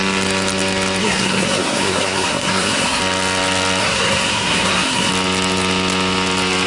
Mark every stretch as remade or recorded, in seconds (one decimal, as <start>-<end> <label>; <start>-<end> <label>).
0.0-1.0 recorded; 1.0-3.0 remade; 3.0-3.8 recorded; 3.8-5.1 remade; 5.1-6.7 recorded